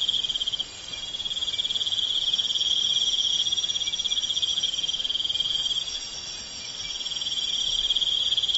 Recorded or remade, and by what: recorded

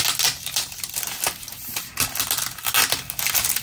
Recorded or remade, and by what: recorded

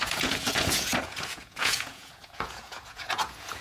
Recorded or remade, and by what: remade, vocoder, Vocos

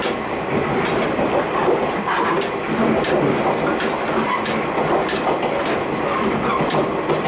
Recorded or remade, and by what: recorded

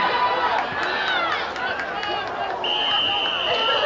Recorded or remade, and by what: recorded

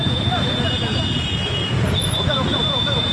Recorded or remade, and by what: remade, vocoder, Vocos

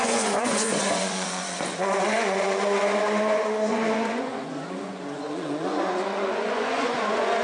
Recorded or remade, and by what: remade, vocoder, Vocos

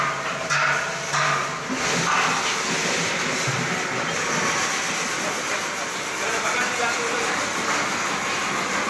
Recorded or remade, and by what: recorded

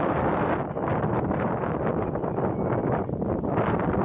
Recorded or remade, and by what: recorded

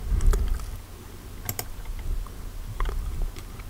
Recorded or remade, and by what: recorded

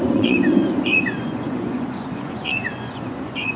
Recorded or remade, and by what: remade, vocoder, Vocos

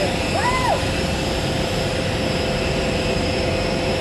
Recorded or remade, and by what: recorded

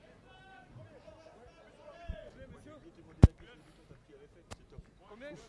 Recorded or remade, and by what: recorded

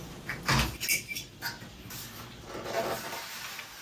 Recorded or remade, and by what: recorded